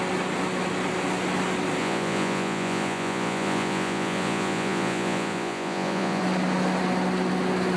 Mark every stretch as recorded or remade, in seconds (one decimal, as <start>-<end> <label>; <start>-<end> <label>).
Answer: 0.0-1.8 recorded; 1.8-6.2 remade; 6.2-7.8 recorded